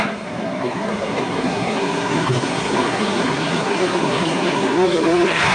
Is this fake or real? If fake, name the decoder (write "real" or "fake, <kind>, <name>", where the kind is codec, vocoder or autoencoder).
fake, codec, SNAC